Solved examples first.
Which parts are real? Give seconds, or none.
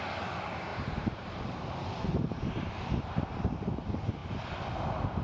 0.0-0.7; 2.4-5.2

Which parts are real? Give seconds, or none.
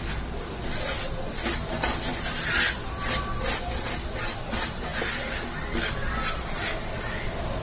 0.0-7.6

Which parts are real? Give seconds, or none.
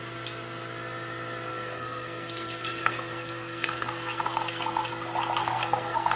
0.0-1.5; 4.9-5.4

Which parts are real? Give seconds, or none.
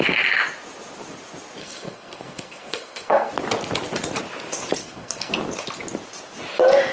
0.0-1.6; 3.3-4.8; 5.3-6.9